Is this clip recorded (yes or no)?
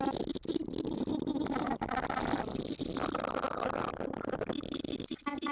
yes